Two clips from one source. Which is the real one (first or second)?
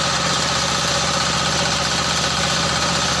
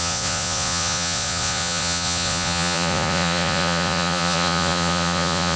first